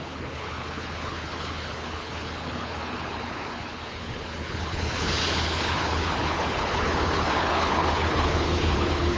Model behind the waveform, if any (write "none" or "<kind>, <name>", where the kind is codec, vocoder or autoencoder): codec, HILCodec